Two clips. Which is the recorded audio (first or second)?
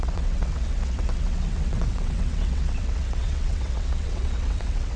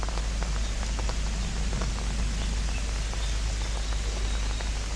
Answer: second